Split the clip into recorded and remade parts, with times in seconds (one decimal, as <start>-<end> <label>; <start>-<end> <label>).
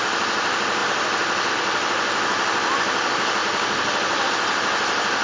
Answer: 0.0-5.2 recorded